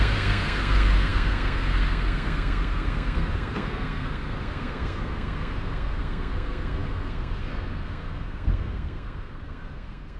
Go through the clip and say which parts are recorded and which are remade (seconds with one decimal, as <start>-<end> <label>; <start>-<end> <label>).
0.0-10.2 remade